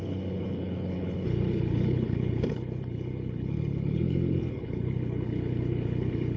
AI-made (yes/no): yes